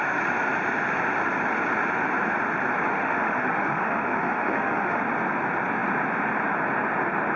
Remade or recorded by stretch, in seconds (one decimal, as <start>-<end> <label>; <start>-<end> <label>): 0.0-2.9 recorded; 2.9-5.0 remade; 5.0-7.4 recorded